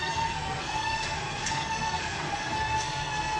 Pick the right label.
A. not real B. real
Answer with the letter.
A